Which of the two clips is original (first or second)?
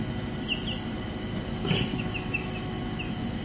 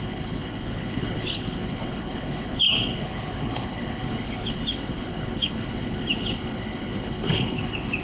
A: first